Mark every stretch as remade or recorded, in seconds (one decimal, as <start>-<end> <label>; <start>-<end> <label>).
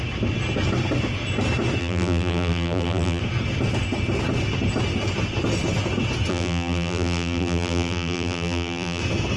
0.0-1.8 recorded; 1.8-3.2 remade; 3.2-6.3 recorded; 6.3-9.0 remade; 9.0-9.4 recorded